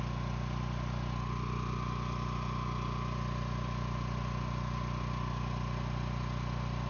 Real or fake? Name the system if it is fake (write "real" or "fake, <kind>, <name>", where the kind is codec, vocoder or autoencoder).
real